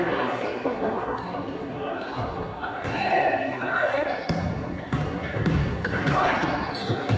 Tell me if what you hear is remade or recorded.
remade